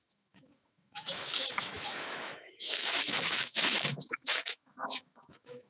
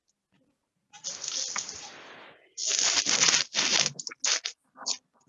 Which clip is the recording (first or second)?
second